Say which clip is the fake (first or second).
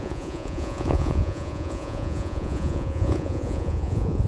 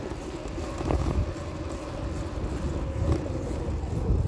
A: first